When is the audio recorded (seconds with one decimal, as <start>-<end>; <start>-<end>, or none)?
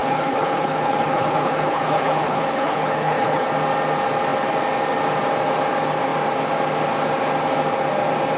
3.5-8.4